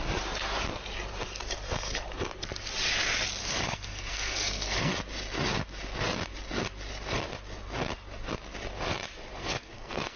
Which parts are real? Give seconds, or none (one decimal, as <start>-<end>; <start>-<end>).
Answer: 0.0-3.4; 4.9-9.4